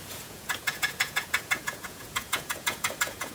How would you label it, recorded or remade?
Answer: remade